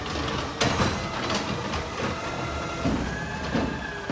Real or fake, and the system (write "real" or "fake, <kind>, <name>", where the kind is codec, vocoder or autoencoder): real